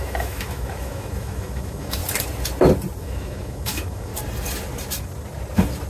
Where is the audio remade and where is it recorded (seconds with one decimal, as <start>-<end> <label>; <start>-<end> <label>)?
0.0-2.0 remade; 2.0-3.0 recorded; 3.0-4.1 remade; 4.1-5.9 recorded